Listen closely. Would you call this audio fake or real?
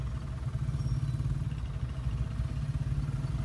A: real